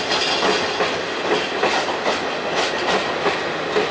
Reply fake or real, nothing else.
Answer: real